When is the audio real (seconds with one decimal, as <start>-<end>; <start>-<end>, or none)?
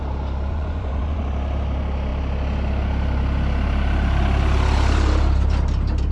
0.0-0.5; 1.2-6.1